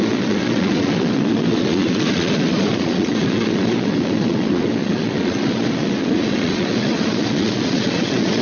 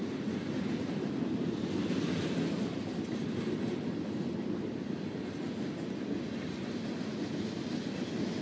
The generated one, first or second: first